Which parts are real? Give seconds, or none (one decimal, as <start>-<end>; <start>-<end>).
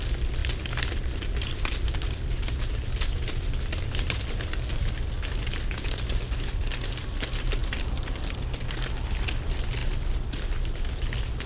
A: 0.0-11.5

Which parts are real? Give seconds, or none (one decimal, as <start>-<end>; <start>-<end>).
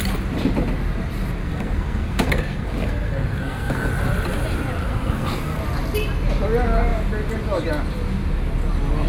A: 0.0-1.4; 3.9-4.8; 5.6-9.1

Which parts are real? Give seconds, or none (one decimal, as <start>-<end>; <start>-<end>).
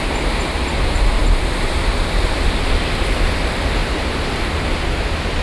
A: 0.0-1.2; 1.8-3.8; 4.7-5.4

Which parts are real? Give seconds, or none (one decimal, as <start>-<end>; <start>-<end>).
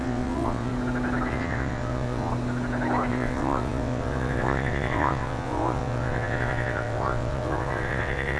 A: 0.7-1.3; 2.3-3.1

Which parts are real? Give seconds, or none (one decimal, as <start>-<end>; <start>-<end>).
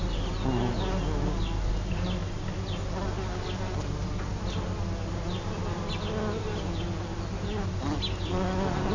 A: 0.0-8.9